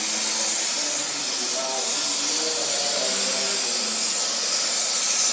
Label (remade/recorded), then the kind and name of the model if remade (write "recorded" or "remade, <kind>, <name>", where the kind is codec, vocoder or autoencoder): recorded